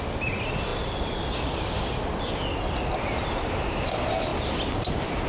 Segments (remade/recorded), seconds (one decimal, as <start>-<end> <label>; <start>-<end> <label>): 0.0-5.3 recorded